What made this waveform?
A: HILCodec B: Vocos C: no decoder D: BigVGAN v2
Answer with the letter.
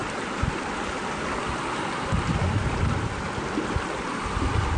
C